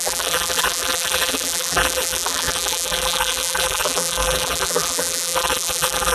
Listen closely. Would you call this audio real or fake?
fake